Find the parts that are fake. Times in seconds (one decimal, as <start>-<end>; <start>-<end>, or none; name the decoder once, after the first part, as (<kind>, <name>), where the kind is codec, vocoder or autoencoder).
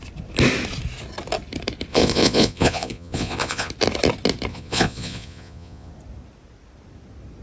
1.9-3.7 (vocoder, Vocos); 4.5-5.9